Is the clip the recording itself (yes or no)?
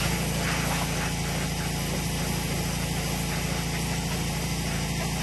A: yes